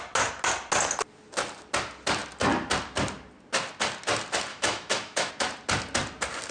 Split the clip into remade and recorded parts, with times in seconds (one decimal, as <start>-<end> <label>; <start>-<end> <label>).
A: 0.0-4.5 recorded; 4.5-5.3 remade; 5.3-6.5 recorded